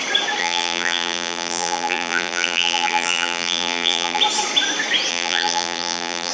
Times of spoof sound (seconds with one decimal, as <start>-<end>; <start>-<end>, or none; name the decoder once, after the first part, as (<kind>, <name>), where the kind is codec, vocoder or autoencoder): 0.4-4.2 (vocoder, BigVGAN v2); 5.1-6.3